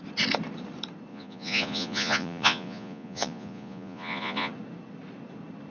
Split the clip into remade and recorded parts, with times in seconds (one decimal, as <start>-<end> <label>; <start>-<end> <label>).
0.0-1.1 recorded; 1.1-4.5 remade; 4.5-5.7 recorded